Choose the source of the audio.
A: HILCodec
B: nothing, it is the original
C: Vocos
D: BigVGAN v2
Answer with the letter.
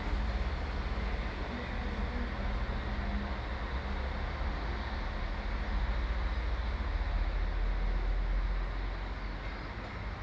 B